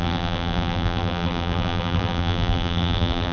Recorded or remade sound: remade